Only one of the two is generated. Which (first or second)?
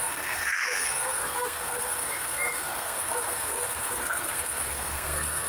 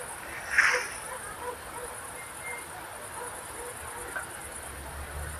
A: first